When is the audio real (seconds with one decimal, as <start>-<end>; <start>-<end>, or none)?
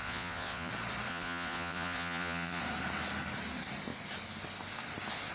0.7-1.1; 2.6-5.3